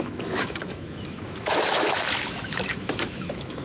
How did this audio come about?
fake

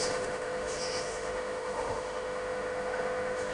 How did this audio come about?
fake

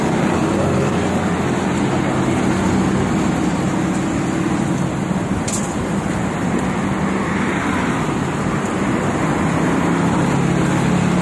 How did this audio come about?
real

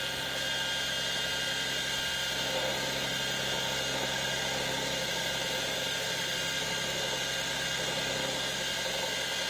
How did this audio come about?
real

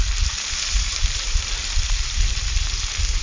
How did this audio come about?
real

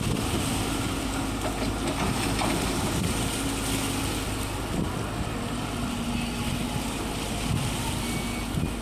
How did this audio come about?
real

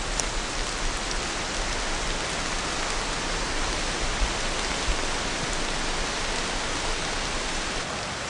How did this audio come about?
real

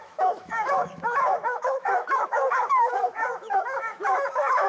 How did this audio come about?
fake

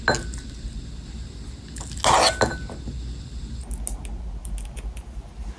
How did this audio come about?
real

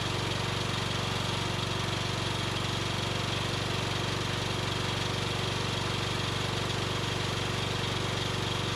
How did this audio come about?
real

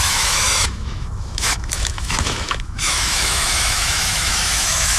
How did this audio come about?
fake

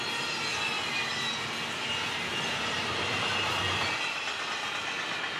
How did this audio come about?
real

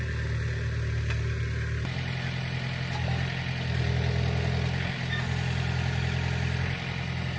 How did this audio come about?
real